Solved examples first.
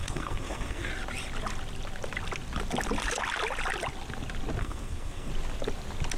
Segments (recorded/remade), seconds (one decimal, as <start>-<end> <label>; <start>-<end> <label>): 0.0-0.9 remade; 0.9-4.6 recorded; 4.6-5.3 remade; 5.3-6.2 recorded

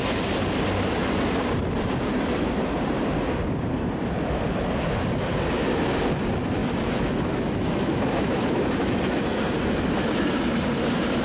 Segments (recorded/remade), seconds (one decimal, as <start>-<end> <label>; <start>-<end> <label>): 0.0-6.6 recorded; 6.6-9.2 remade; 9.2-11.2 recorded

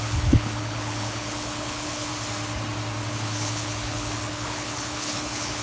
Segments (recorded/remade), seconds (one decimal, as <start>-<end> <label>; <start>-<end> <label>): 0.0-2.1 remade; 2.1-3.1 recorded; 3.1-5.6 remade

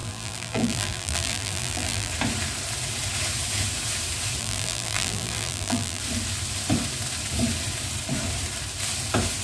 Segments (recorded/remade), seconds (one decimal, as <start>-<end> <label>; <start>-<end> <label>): 0.0-2.1 remade; 2.1-4.4 recorded; 4.4-6.0 remade; 6.0-9.4 recorded